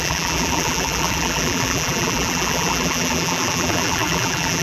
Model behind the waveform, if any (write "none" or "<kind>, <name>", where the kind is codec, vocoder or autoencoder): vocoder, BigVGAN v2